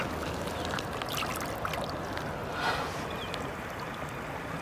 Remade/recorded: recorded